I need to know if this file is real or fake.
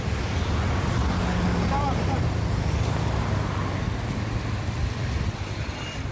real